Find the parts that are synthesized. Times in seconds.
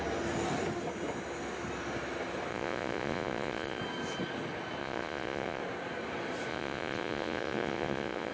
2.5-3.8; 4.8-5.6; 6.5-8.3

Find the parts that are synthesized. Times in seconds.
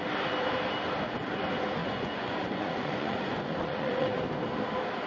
1.8-4.2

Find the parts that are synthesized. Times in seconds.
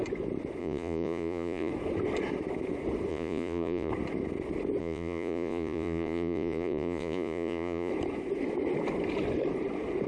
0.6-1.7; 3.1-3.9; 4.8-7.9